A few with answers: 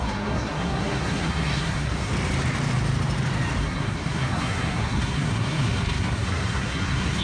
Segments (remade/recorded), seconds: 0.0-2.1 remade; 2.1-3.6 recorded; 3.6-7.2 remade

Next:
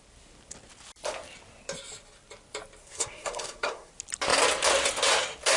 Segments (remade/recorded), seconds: 0.0-2.8 recorded; 2.8-3.9 remade; 3.9-5.6 recorded